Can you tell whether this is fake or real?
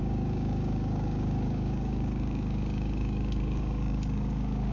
fake